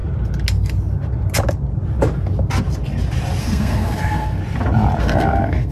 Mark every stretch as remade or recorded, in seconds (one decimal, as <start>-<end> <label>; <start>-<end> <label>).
0.0-3.4 recorded; 3.4-4.4 remade; 4.4-5.0 recorded; 5.0-5.7 remade